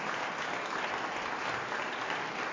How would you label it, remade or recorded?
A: recorded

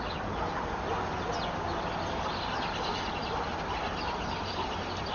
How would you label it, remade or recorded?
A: recorded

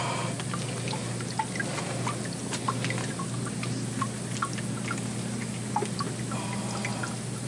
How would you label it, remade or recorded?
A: recorded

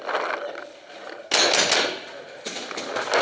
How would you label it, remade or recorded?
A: recorded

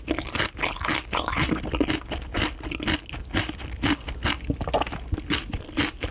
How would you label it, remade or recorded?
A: recorded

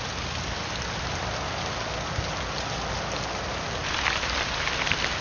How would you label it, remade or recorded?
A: recorded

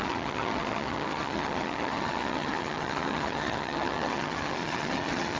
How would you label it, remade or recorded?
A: remade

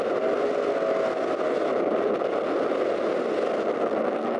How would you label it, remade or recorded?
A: recorded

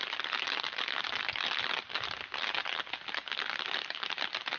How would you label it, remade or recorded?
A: recorded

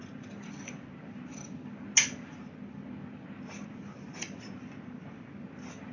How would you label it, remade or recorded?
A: recorded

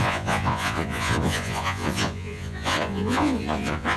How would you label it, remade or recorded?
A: remade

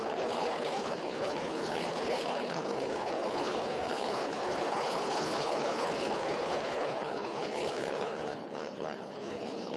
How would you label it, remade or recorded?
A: remade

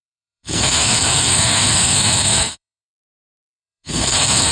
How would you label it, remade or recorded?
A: remade